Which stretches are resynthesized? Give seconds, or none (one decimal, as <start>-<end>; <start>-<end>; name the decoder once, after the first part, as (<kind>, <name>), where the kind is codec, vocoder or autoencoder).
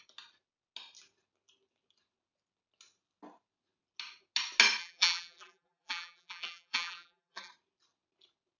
4.8-7.5 (vocoder, BigVGAN v2)